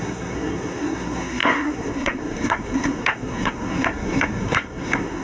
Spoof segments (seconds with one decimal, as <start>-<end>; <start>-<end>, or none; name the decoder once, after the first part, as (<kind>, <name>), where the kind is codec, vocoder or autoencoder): 0.0-5.2 (codec, SNAC)